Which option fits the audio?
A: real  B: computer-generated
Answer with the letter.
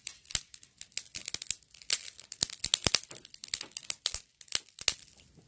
A